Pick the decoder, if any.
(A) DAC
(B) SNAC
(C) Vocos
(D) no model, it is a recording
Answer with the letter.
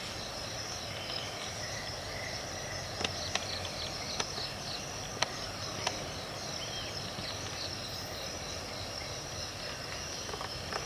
D